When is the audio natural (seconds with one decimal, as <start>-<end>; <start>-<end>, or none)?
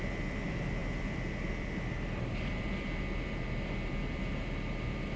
0.0-5.2